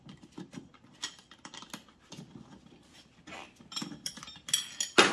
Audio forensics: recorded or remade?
recorded